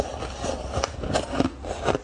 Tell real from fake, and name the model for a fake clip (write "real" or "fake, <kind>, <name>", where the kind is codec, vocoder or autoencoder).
real